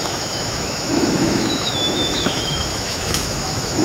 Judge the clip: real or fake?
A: fake